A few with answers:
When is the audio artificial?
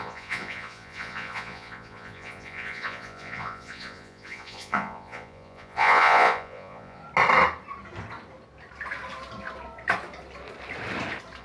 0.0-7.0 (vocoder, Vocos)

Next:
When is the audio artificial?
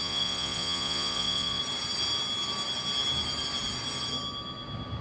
0.0-1.6 (vocoder, Vocos)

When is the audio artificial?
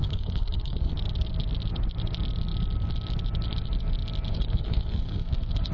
0.0-0.9 (codec, SNAC); 4.3-5.7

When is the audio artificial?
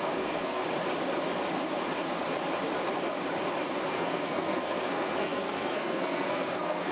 0.0-0.6 (codec, SNAC); 3.9-6.9